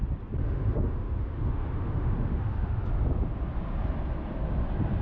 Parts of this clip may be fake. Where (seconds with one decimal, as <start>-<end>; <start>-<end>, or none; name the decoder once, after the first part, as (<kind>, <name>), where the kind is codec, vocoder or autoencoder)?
0.4-2.8 (autoencoder, DAC-VAE)